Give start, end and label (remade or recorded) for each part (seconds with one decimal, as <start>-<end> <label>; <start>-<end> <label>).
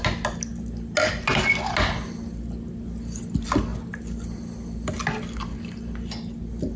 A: 0.0-6.8 recorded